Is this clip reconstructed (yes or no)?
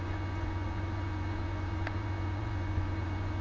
yes